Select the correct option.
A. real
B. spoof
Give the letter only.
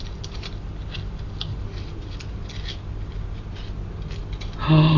A